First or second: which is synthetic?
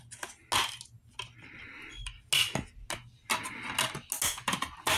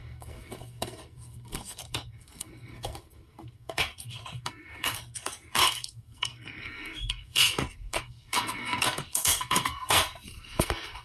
second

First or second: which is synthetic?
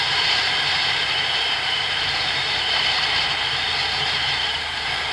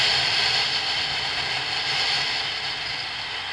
first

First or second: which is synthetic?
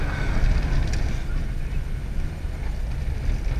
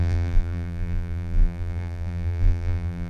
second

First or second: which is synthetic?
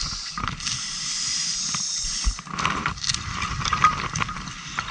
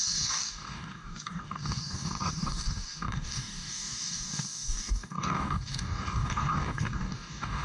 second